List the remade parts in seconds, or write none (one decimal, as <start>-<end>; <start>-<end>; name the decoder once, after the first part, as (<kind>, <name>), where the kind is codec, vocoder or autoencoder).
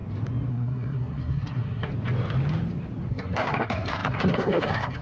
0.5-1.9 (codec, SNAC); 3.1-5.0